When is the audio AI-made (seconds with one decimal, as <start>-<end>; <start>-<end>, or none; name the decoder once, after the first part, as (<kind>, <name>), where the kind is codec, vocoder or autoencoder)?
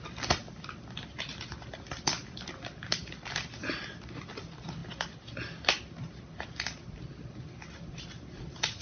none